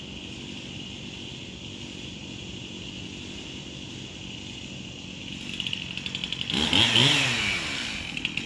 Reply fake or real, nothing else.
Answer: real